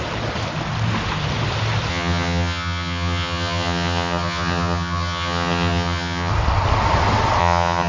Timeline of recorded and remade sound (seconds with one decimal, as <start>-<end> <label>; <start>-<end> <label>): 0.0-1.9 recorded; 1.9-6.3 remade; 6.3-7.4 recorded; 7.4-7.9 remade